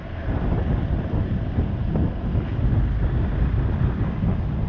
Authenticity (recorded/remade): recorded